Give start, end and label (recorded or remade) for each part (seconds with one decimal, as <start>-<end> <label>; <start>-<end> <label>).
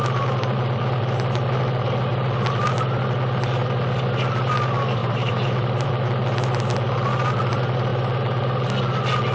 0.0-5.0 recorded; 5.0-5.9 remade; 5.9-9.3 recorded